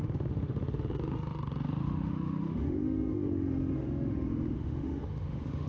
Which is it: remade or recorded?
remade